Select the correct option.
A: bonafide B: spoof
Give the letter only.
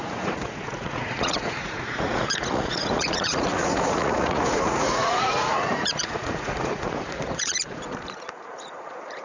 B